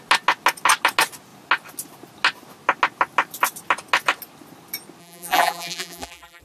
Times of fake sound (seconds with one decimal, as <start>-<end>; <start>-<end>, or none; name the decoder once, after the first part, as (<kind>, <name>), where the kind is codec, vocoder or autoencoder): 5.0-6.4 (vocoder, BigVGAN v2)